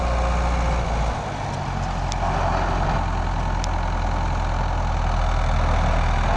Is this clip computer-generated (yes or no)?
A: no